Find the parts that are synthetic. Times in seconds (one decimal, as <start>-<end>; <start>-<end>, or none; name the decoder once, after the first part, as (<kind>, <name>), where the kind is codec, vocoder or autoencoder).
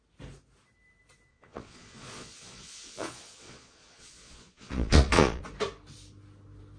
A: 1.3-5.4 (vocoder, Vocos)